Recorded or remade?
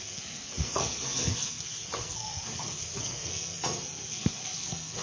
remade